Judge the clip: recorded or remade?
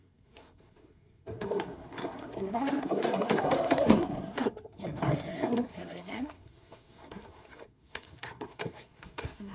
remade